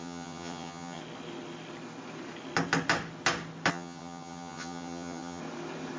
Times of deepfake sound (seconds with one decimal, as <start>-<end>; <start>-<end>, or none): 0.0-1.0; 3.7-5.4